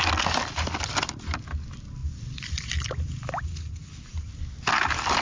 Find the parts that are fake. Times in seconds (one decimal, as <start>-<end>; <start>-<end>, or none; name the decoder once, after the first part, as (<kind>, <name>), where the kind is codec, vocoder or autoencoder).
none